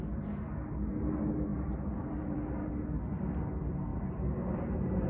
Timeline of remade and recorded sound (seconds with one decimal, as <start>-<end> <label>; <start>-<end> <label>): 0.0-1.5 recorded; 1.5-2.7 remade; 2.7-3.9 recorded; 3.9-4.6 remade; 4.6-5.1 recorded